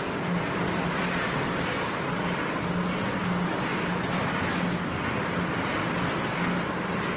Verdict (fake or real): real